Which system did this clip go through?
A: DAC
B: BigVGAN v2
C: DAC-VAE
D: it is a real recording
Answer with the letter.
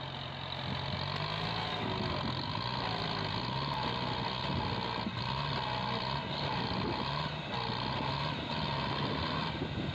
D